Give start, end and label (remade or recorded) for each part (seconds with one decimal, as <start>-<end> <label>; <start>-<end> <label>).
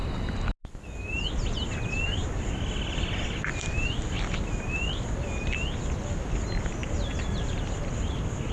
0.0-8.5 recorded